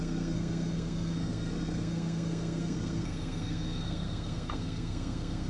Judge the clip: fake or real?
fake